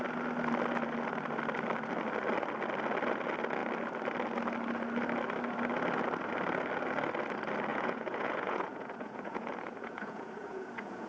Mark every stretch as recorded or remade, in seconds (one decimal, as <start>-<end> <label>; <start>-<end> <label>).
0.0-7.7 recorded; 7.7-11.1 remade